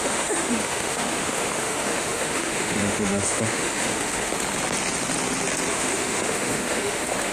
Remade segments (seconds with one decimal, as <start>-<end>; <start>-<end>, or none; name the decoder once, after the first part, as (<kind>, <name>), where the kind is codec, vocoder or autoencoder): 0.0-4.3 (autoencoder, DAC-VAE); 5.7-7.3